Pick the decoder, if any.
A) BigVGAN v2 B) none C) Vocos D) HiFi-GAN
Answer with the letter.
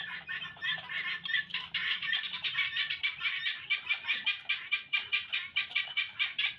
A